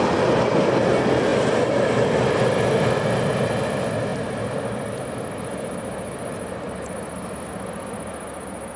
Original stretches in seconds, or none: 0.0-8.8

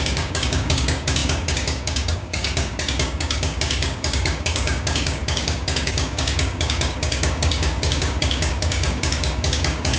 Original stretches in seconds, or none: none

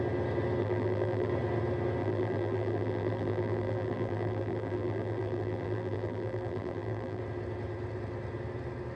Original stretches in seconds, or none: 0.0-0.6; 1.3-2.0; 7.2-9.0